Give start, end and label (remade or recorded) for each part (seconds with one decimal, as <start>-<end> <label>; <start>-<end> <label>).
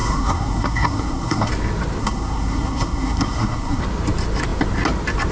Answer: 0.0-1.5 remade; 1.5-2.0 recorded; 2.0-3.8 remade; 3.8-5.3 recorded